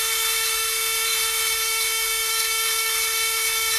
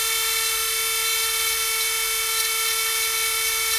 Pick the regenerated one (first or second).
first